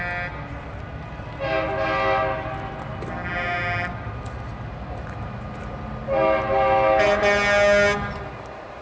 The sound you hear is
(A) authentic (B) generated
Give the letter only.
A